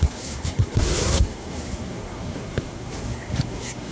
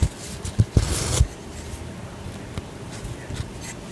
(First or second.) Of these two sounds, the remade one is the first